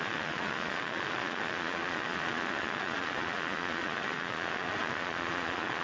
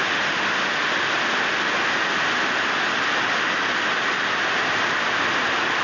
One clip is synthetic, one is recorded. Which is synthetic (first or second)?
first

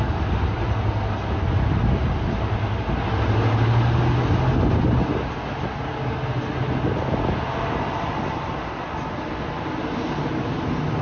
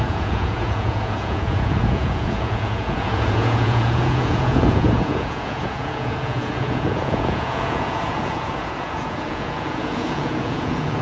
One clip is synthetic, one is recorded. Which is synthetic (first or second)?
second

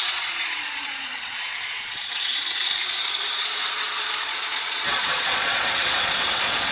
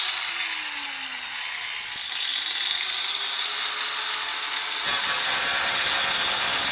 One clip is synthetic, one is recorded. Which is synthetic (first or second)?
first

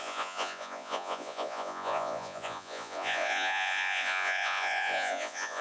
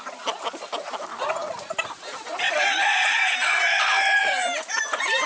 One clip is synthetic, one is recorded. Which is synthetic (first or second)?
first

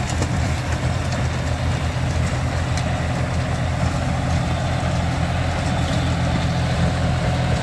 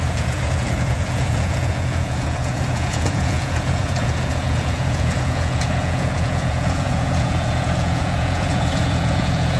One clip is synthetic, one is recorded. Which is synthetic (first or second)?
second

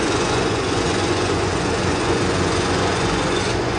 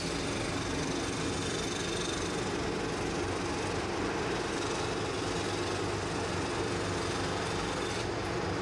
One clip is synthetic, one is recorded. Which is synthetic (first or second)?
first